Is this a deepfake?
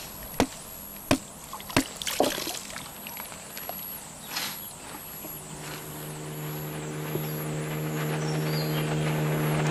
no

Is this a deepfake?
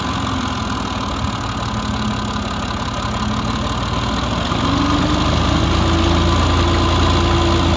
no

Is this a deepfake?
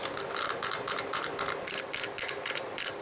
no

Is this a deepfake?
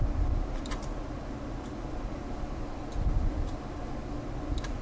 no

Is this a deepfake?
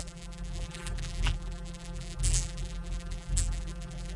yes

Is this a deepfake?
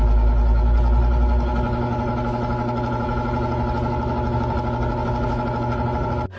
no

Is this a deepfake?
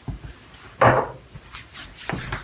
no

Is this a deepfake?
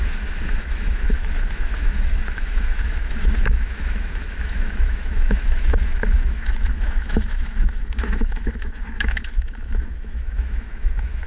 yes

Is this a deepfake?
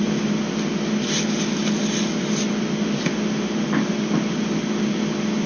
no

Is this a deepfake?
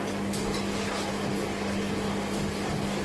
no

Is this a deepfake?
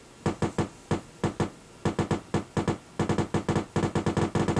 no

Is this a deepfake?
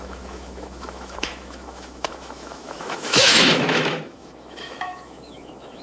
yes